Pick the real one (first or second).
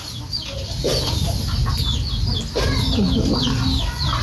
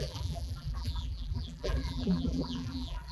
first